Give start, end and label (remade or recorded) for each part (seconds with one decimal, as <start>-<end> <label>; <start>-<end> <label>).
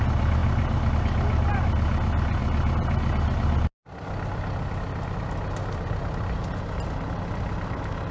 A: 0.0-8.1 recorded